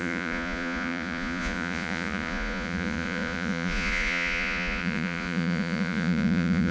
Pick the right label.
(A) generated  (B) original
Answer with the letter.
A